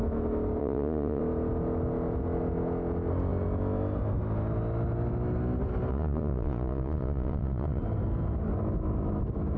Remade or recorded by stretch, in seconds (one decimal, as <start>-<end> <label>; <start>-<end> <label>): 0.0-0.6 recorded; 0.6-1.2 remade; 1.2-5.9 recorded; 5.9-7.8 remade; 7.8-9.6 recorded